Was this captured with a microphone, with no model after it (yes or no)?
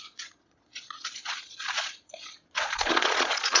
no